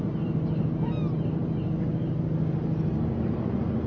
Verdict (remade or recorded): recorded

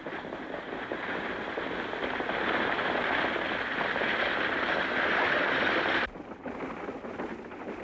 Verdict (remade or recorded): recorded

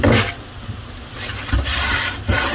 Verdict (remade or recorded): recorded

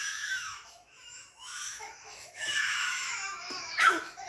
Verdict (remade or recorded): remade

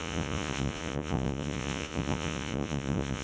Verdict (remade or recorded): remade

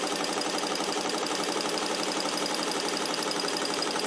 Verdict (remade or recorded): remade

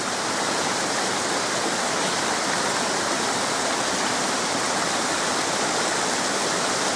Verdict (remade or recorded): recorded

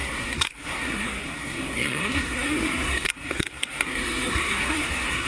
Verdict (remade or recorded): remade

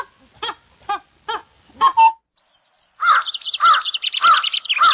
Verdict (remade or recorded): recorded